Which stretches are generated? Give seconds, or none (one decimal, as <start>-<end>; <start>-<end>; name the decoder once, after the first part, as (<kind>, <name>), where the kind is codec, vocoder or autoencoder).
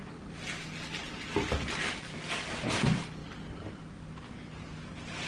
none